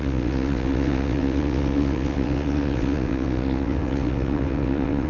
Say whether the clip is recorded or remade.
remade